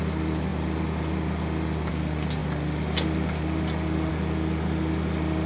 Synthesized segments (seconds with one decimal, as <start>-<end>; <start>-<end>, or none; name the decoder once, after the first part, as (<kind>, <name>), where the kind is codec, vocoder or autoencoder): none